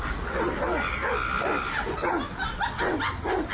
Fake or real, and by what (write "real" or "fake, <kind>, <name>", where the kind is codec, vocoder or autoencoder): real